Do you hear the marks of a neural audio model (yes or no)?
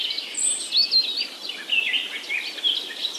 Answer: no